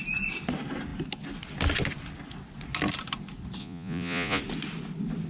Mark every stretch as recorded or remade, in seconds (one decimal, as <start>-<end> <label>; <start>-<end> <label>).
0.0-3.6 recorded; 3.6-4.4 remade; 4.4-5.3 recorded